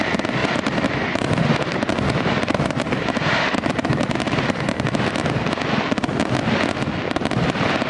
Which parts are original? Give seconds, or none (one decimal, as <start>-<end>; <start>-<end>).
0.0-0.4; 5.1-7.9